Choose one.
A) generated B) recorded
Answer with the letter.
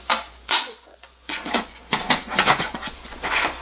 A